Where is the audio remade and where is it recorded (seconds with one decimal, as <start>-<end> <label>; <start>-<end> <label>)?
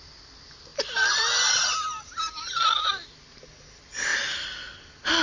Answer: 0.0-5.2 recorded